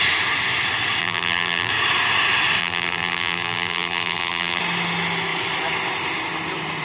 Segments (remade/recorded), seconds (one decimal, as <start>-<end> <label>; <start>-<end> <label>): 0.0-1.0 recorded; 1.0-1.7 remade; 1.7-2.6 recorded; 2.6-4.6 remade; 4.6-6.8 recorded